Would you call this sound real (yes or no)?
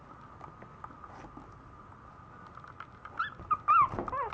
yes